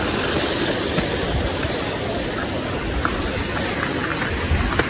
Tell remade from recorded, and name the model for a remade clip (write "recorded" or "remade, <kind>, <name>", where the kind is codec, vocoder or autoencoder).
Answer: recorded